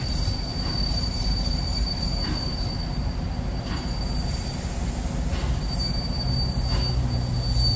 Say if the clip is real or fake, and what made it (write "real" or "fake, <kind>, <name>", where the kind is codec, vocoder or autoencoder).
real